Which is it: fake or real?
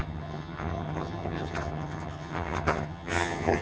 fake